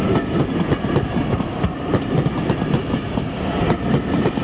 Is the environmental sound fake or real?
real